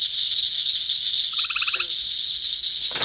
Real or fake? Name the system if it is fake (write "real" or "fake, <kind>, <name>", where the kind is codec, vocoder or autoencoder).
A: real